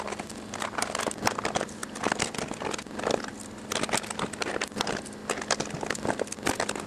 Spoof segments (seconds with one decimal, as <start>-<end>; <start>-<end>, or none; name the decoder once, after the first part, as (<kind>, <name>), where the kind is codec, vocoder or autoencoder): none